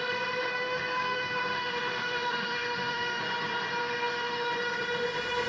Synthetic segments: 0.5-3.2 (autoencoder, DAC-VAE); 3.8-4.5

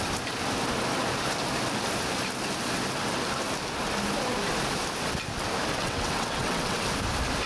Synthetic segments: 5.7-6.8 (vocoder, WaveNeXt)

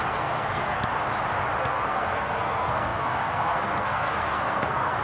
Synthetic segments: 0.0-0.9 (codec, SNAC); 1.6-5.0

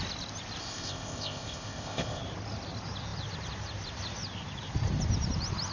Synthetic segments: 0.6-2.2 (codec, ZipCodec)